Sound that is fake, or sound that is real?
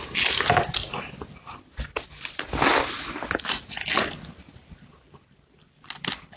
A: real